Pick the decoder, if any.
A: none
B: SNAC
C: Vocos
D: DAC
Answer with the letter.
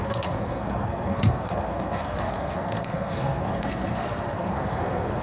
B